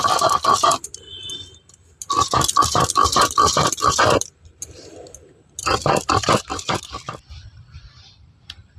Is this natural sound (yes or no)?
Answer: no